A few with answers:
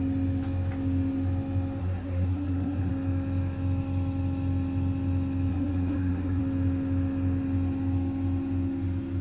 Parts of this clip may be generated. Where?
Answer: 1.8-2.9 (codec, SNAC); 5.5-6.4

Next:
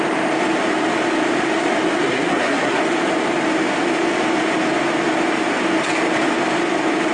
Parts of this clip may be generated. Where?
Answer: 2.0-2.8 (codec, SNAC)

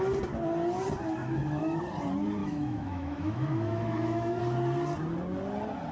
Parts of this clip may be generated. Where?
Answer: 1.2-1.8 (autoencoder, DAC-VAE); 2.4-4.4